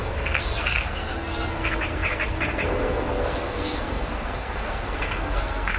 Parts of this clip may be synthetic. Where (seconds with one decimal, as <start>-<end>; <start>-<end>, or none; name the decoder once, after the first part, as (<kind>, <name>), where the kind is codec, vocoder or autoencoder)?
0.0-5.8 (codec, SNAC)